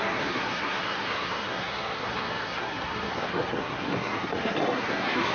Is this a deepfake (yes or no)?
yes